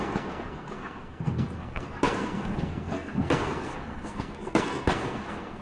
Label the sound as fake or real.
fake